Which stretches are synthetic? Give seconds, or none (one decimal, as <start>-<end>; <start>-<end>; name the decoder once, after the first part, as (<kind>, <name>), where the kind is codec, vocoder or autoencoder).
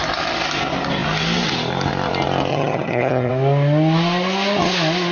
2.5-3.3 (vocoder, HiFi-GAN)